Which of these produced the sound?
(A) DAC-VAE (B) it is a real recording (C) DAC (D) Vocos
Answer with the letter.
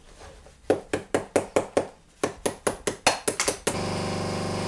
B